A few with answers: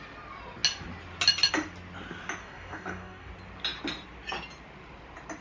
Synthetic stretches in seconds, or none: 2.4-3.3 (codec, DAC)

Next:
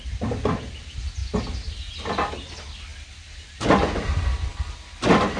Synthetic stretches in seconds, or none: none

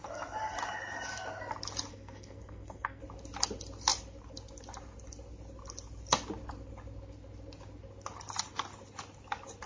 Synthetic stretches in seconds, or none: 1.9-3.0 (codec, SNAC)

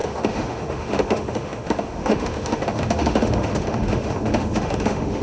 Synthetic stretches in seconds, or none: 0.0-5.2 (autoencoder, DAC-VAE)

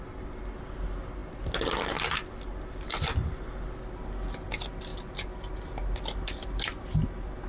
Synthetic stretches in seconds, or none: none

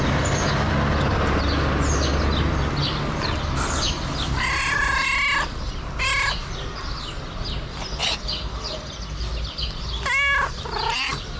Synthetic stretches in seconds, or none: none